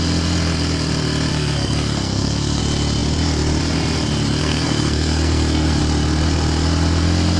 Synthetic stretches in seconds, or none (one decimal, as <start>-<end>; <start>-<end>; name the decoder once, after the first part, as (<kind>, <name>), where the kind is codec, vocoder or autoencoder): 1.3-2.6 (codec, SNAC); 4.4-5.8